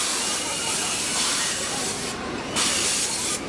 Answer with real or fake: real